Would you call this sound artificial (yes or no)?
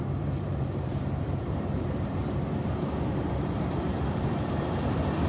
yes